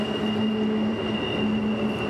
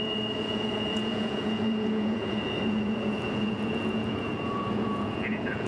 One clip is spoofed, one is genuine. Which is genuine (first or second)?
first